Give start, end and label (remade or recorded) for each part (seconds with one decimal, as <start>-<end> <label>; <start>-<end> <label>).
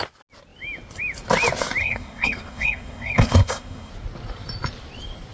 0.0-1.8 recorded; 1.8-3.9 remade; 3.9-5.3 recorded